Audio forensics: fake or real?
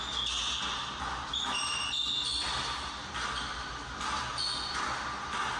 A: real